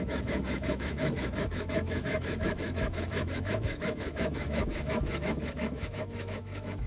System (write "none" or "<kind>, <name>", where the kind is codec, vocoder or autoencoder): autoencoder, DAC-VAE